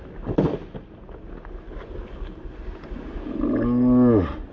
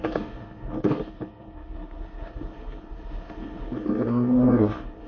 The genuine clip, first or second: first